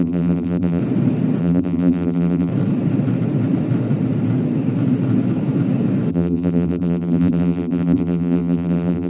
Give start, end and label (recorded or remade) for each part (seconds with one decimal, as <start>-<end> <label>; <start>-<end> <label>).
0.0-0.8 remade; 0.8-1.4 recorded; 1.4-2.5 remade; 2.5-6.1 recorded; 6.1-9.1 remade